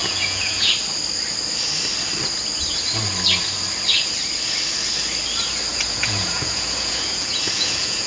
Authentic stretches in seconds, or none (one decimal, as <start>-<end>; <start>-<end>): 0.7-5.7